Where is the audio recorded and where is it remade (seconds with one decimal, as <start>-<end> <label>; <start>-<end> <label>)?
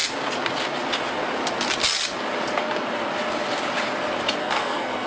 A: 0.0-4.4 recorded; 4.4-5.1 remade